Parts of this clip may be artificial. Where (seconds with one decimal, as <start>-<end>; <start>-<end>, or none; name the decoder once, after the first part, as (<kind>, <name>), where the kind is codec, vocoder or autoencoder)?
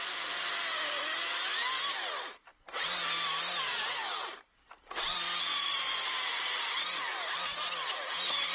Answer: 5.5-6.7 (vocoder, BigVGAN v2)